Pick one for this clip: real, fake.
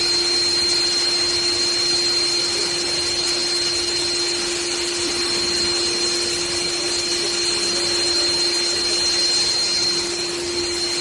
real